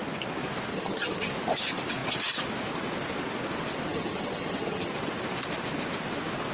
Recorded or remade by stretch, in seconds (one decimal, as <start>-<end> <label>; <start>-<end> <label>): 0.0-0.7 recorded; 0.7-1.3 remade; 1.3-3.9 recorded; 3.9-4.9 remade; 4.9-6.5 recorded